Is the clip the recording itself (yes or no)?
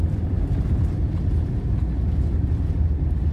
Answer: yes